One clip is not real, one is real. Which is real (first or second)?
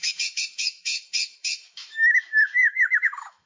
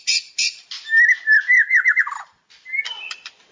second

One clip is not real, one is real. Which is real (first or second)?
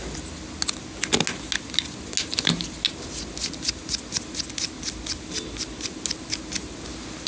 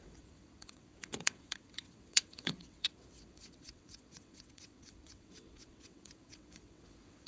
first